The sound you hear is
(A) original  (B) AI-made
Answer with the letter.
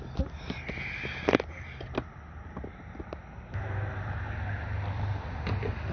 A